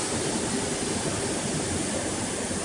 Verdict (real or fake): real